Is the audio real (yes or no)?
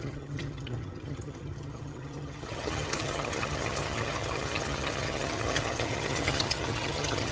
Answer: no